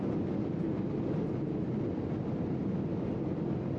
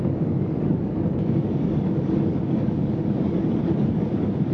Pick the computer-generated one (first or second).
second